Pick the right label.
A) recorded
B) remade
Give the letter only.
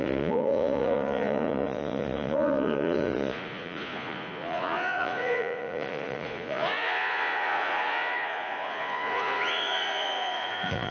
B